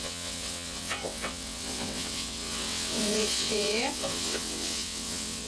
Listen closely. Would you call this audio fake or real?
fake